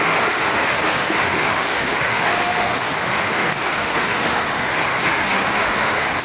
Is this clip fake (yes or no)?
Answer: yes